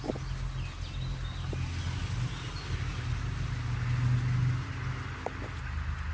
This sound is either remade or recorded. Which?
recorded